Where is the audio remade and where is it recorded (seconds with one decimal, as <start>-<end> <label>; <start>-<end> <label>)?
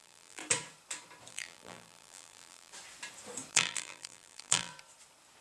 0.0-0.4 remade; 0.4-1.3 recorded; 1.3-2.7 remade; 2.7-3.5 recorded; 3.5-4.7 remade; 4.7-5.4 recorded